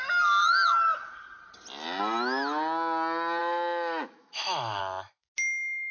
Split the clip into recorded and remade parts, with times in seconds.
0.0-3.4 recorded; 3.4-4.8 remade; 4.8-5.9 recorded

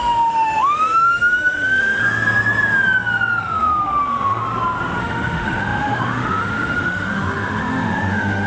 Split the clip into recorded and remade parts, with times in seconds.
0.0-2.0 remade; 2.0-3.4 recorded; 3.4-4.4 remade; 4.4-5.0 recorded; 5.0-8.5 remade

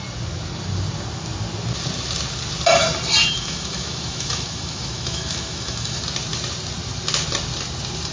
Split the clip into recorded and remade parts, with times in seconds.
0.0-3.2 recorded; 3.2-6.0 remade; 6.0-8.1 recorded